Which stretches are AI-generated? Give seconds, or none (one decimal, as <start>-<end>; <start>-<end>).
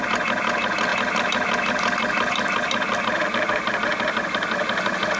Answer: none